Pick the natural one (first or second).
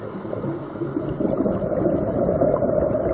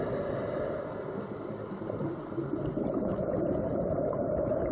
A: first